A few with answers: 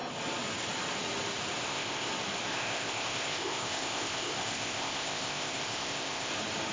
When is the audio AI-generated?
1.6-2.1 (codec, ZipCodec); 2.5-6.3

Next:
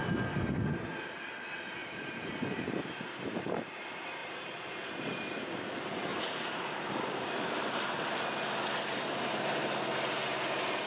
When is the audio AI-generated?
1.8-2.3 (vocoder, BigVGAN v2); 4.2-4.9; 6.1-7.7

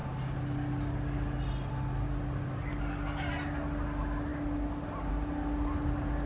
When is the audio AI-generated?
none

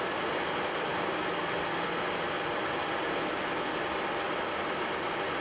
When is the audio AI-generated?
none

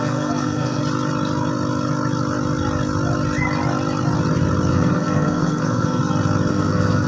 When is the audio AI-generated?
0.0-0.8 (codec, SNAC); 4.7-6.0; 6.5-7.1